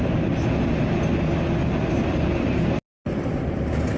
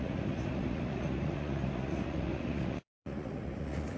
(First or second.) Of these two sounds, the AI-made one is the second